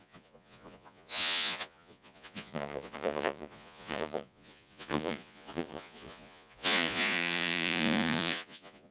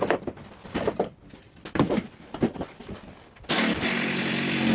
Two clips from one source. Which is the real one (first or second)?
second